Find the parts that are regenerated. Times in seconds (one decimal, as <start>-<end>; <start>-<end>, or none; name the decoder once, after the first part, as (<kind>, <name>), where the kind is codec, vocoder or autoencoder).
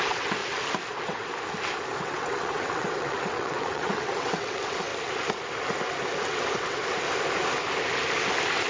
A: 0.0-0.4 (vocoder, WaveNeXt); 0.9-1.3; 2.0-4.9; 6.2-6.8